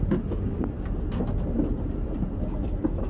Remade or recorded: recorded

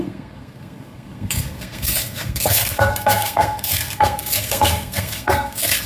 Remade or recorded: remade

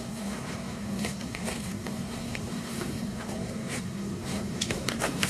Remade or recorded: remade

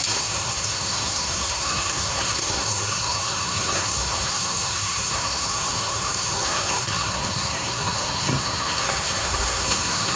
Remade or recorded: remade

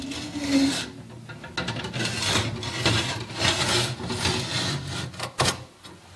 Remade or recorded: recorded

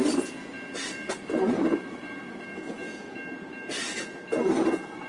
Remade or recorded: recorded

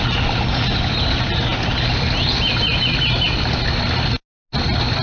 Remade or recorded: recorded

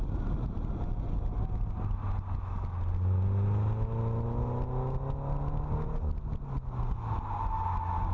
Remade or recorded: recorded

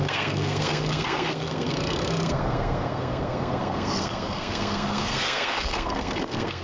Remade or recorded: remade